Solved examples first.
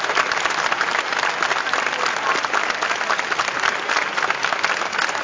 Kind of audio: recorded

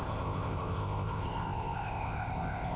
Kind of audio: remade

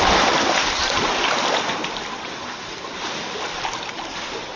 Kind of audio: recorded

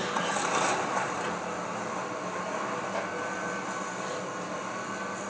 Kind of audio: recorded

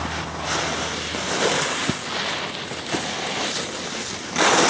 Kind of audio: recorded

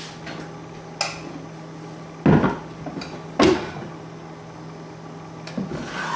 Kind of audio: recorded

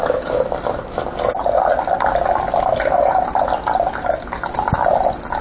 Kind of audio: recorded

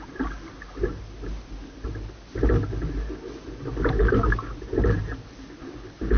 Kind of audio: recorded